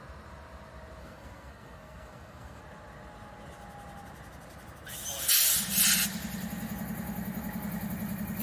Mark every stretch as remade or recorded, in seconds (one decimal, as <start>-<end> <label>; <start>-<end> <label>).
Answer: 0.0-1.0 recorded; 1.0-2.6 remade; 2.6-8.4 recorded